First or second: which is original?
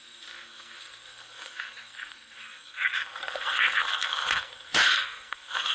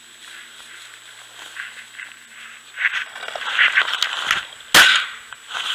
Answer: second